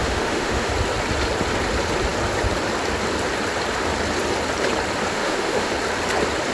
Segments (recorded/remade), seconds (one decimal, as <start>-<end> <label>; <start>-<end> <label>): 0.0-0.7 remade; 0.7-5.1 recorded; 5.1-5.7 remade; 5.7-6.5 recorded